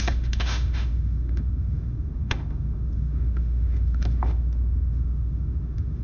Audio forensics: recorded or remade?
remade